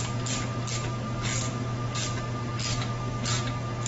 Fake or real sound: real